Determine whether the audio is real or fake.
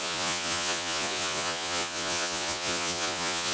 fake